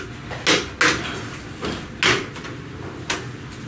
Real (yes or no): yes